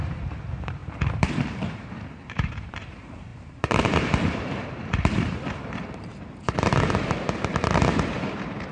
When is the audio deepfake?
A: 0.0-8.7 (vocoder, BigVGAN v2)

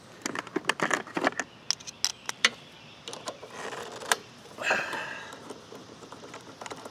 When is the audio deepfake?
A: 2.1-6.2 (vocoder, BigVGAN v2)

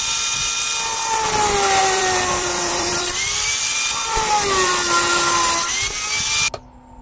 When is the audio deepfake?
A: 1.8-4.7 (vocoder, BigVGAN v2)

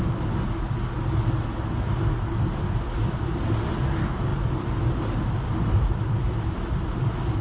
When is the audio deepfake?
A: none

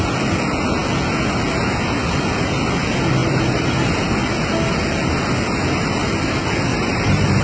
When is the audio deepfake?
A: 3.2-3.9 (vocoder, BigVGAN v2); 6.7-7.4

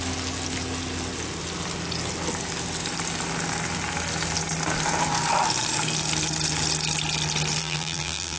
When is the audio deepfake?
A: 7.6-8.4 (vocoder, BigVGAN v2)

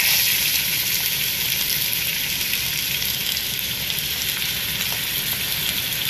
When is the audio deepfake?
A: none